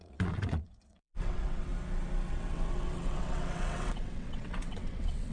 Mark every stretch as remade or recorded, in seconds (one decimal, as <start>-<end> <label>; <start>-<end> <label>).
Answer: 0.0-1.7 remade; 1.7-2.3 recorded; 2.3-5.3 remade